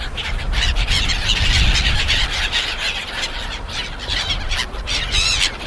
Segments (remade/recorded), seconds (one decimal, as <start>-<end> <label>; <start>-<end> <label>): 0.0-5.7 recorded